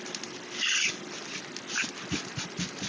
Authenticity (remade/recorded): recorded